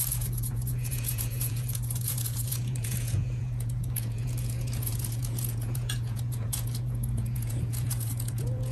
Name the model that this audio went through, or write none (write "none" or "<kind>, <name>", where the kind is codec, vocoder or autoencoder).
vocoder, Vocos